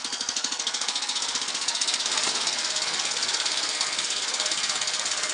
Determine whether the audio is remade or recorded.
remade